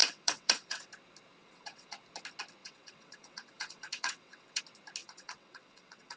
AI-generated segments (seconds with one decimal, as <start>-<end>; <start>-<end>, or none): 0.0-0.9; 1.4-2.0; 2.6-4.6; 5.0-6.2